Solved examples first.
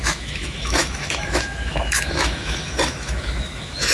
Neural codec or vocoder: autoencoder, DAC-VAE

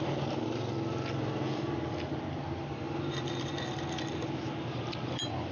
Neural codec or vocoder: none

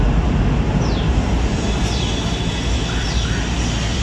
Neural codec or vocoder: none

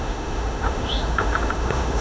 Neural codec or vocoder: autoencoder, DAC-VAE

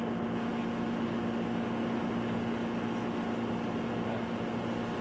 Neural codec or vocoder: none